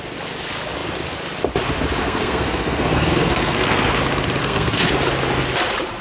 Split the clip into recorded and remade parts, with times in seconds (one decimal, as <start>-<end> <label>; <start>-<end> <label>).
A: 0.0-2.0 recorded; 2.0-3.9 remade; 3.9-4.4 recorded; 4.4-4.9 remade; 4.9-6.0 recorded